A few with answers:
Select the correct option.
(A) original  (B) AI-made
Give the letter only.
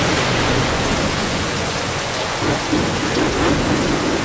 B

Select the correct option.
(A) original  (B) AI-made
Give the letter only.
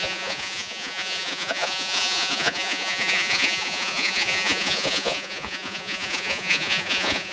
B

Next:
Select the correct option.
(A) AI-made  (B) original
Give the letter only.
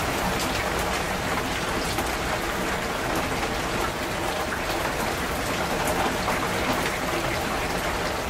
B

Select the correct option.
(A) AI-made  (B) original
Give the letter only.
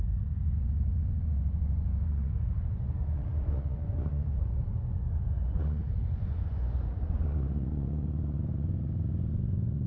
A